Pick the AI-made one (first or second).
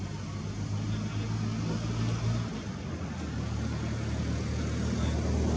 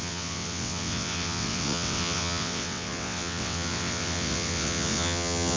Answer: second